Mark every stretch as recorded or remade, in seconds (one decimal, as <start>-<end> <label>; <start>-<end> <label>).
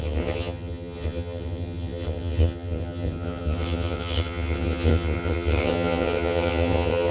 0.0-7.1 remade